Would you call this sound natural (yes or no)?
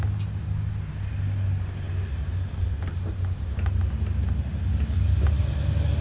yes